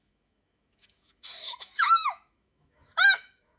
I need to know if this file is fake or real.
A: fake